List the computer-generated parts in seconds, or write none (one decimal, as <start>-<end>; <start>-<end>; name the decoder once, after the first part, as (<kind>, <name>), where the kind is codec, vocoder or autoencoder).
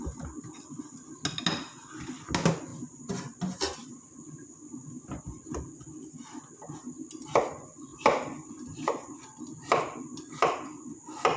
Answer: none